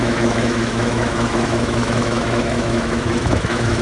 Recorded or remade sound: remade